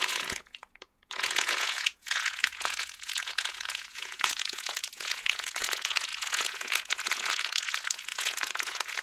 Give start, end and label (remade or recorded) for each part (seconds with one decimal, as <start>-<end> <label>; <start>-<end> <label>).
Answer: 0.0-9.0 remade